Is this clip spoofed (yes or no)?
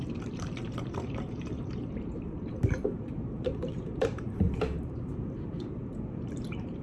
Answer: yes